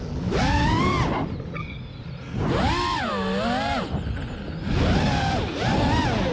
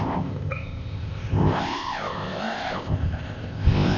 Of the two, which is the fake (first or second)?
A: second